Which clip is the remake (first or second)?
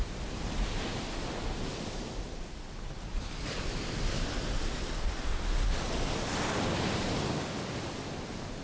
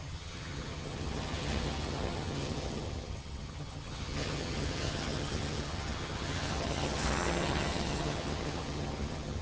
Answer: second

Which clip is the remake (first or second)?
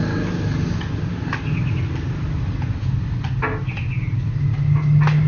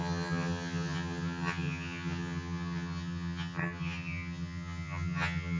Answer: second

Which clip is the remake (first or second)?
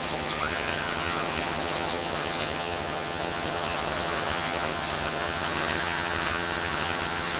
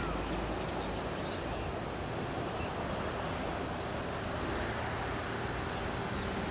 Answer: first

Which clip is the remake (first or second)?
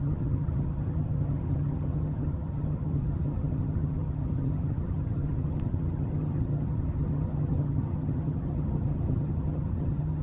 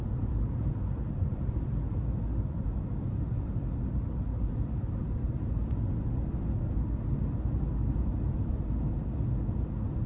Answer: first